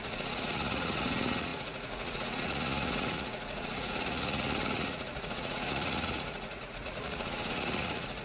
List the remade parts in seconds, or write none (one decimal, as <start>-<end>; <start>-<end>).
0.0-8.2